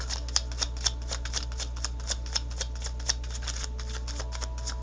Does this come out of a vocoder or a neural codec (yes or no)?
no